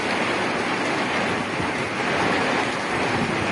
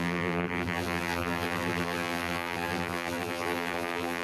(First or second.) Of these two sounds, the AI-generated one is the second